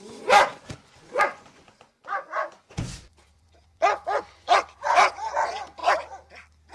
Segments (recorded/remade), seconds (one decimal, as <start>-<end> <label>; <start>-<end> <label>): 0.0-5.8 remade; 5.8-6.7 recorded